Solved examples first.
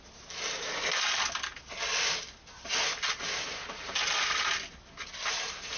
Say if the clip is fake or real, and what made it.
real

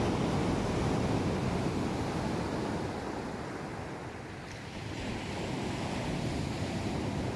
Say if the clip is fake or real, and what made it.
real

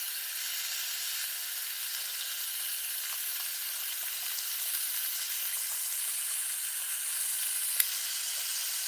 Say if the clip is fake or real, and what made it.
real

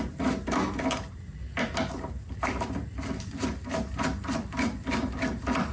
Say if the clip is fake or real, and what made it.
real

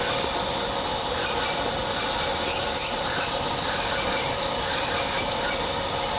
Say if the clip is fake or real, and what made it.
real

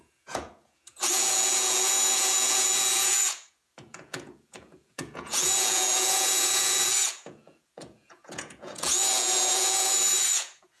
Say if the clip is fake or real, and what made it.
fake, vocoder, Vocos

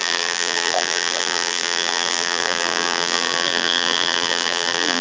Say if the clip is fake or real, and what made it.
fake, vocoder, BigVGAN v2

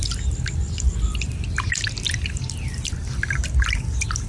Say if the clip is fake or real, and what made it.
real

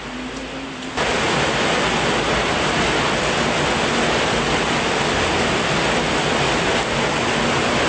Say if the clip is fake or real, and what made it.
real